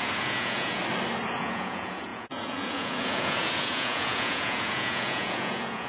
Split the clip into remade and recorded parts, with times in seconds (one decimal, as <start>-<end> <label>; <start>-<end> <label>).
0.0-0.8 remade; 0.8-1.4 recorded; 1.4-5.9 remade